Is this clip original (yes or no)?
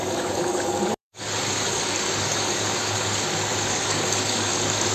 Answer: no